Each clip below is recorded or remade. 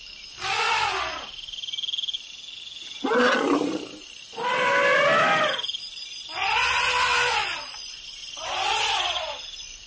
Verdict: recorded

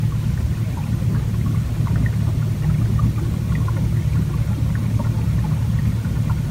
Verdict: recorded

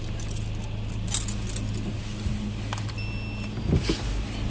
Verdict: recorded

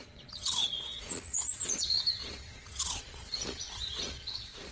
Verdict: remade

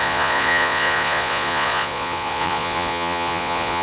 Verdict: remade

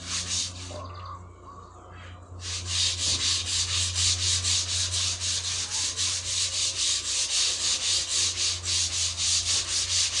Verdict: recorded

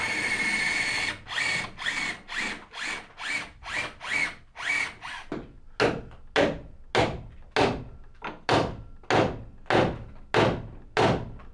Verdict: recorded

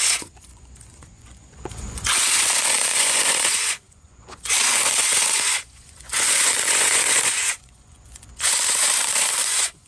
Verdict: remade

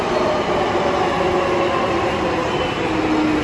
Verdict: recorded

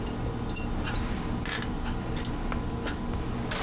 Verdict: recorded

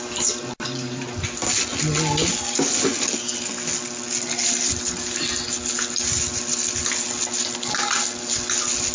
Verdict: recorded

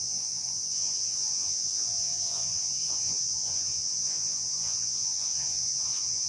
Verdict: remade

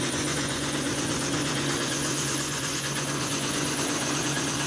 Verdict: remade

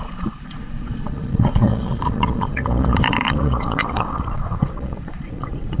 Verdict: remade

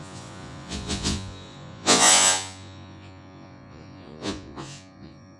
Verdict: remade